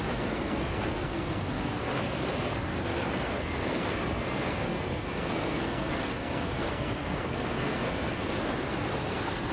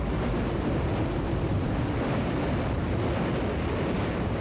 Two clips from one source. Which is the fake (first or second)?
first